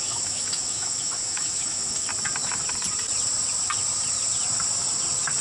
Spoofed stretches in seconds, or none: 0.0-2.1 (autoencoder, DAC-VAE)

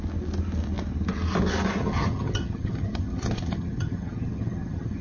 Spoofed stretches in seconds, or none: 1.8-5.0 (vocoder, HiFi-GAN)

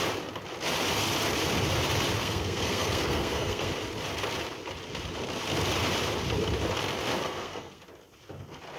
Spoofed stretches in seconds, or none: 2.2-3.7 (codec, SNAC); 7.2-7.8